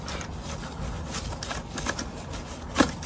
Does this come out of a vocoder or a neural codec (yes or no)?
no